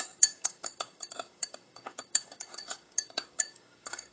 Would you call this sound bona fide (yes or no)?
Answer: no